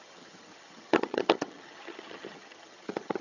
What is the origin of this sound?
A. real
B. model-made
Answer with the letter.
B